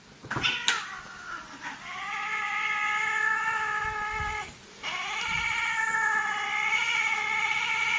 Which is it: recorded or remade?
recorded